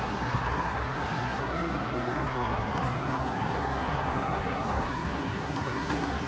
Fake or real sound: fake